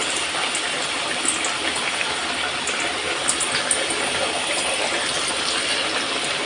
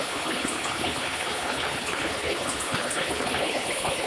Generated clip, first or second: second